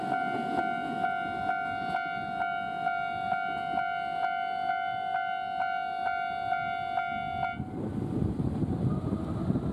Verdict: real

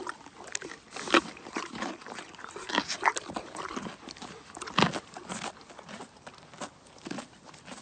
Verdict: real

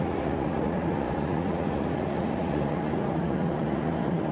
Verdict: fake